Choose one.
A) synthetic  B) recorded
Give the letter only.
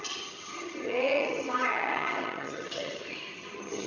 A